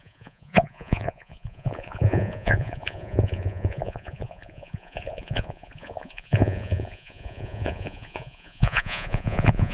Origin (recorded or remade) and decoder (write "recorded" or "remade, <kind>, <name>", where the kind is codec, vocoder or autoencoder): remade, vocoder, Vocos